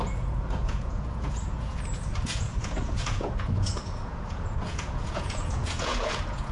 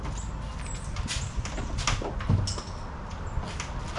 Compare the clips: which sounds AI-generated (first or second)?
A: first